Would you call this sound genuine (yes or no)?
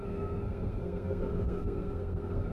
no